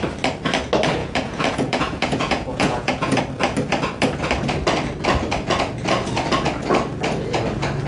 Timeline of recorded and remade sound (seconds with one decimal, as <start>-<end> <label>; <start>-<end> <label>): 0.0-1.0 recorded; 1.0-3.2 remade; 3.2-7.9 recorded